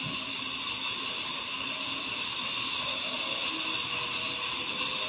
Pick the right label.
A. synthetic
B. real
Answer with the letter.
B